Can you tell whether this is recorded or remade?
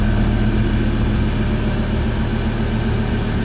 recorded